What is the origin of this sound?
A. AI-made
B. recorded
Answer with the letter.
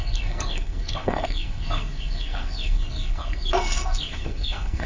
A